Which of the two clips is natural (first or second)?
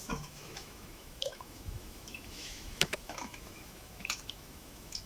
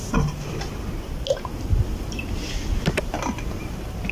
second